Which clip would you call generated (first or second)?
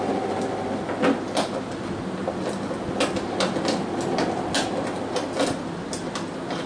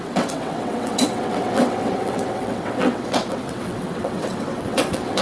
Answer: second